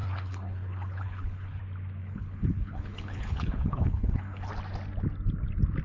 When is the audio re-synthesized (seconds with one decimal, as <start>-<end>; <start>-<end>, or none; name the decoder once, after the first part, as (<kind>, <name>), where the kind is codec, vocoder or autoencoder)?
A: 0.0-1.6 (codec, HILCodec); 2.0-4.5